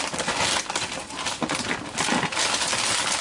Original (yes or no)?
yes